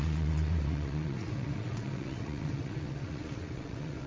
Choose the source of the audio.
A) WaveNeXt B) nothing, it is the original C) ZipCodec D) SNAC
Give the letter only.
A